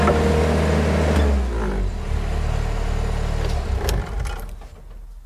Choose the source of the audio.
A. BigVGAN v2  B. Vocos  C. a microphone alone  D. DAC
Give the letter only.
C